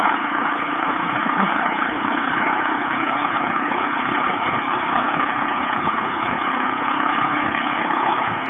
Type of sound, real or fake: fake